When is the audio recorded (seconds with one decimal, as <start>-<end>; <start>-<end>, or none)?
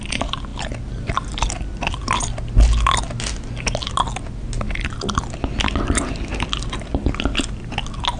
0.0-8.2